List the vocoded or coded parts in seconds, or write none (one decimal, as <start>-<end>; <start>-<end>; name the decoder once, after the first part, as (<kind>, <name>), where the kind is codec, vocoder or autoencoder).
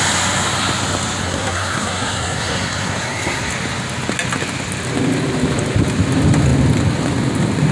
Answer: 1.2-3.5 (codec, SNAC)